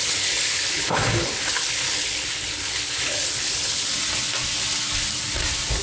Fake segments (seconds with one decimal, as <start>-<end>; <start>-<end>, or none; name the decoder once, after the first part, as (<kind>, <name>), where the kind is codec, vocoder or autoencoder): 0.0-3.9 (codec, HILCodec)